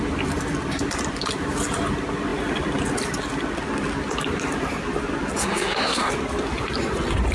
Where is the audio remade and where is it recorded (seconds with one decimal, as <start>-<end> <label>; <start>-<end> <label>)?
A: 0.0-5.4 recorded; 5.4-6.1 remade; 6.1-7.3 recorded